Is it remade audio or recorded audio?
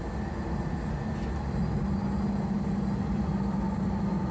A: recorded